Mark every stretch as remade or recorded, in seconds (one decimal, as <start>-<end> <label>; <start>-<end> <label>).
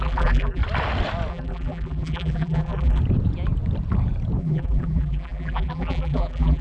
0.0-0.6 remade; 0.6-1.3 recorded; 1.3-3.0 remade; 3.0-4.4 recorded; 4.4-6.6 remade